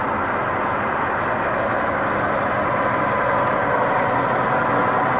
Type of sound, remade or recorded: recorded